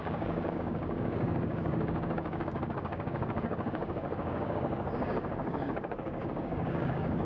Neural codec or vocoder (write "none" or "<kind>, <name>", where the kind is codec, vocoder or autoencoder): codec, DAC